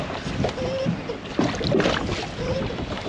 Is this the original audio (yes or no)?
yes